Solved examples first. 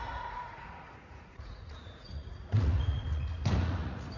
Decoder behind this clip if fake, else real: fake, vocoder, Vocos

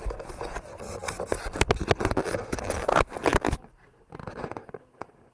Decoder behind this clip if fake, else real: real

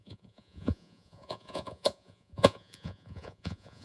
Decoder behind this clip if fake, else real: fake, vocoder, Vocos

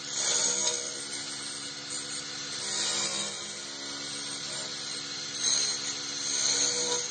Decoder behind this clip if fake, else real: real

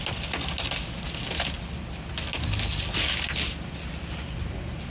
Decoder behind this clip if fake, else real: real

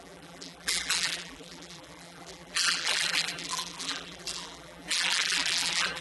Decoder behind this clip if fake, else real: fake, vocoder, BigVGAN v2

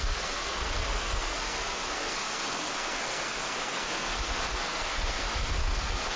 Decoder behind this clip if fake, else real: fake, codec, SNAC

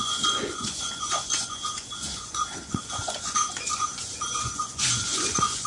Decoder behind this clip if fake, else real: fake, vocoder, Vocos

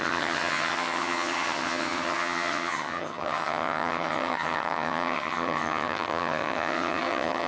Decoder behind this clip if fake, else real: fake, vocoder, HiFi-GAN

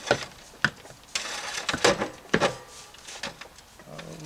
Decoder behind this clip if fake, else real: real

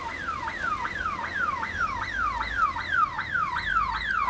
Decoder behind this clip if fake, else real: real